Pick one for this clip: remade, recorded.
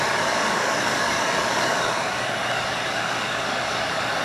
remade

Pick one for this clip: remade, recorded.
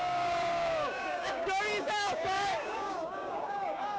remade